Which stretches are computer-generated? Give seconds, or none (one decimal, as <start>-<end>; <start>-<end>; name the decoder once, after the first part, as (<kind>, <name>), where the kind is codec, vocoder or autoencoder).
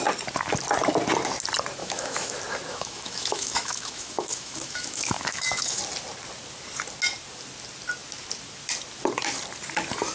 1.8-2.3 (autoencoder, DAC-VAE); 2.7-5.8